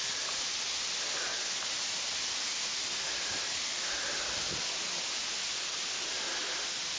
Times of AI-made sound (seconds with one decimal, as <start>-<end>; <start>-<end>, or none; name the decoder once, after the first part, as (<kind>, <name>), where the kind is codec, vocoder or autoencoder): none